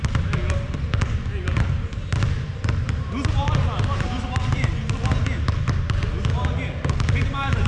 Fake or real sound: real